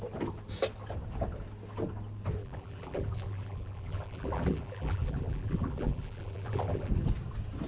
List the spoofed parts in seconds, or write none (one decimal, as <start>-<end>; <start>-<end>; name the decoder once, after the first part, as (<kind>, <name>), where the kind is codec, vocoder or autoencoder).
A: 2.4-6.9 (vocoder, BigVGAN v2)